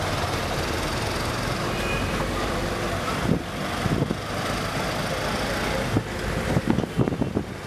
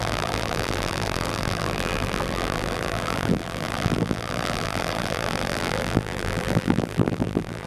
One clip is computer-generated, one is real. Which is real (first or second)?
first